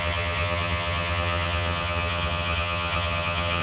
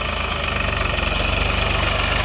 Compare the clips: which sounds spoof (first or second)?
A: first